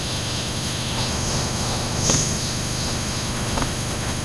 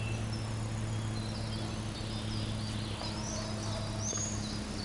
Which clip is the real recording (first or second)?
second